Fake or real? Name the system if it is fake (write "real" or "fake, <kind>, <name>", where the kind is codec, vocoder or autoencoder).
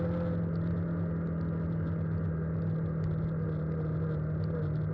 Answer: real